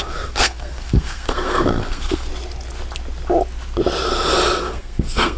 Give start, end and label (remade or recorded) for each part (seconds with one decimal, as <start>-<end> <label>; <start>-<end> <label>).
0.0-2.3 remade; 2.3-4.6 recorded; 4.6-5.4 remade